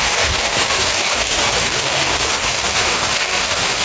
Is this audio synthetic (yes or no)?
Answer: yes